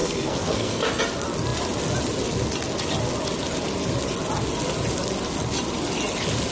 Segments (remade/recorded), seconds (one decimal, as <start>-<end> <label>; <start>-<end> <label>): 0.0-1.0 remade; 1.0-6.5 recorded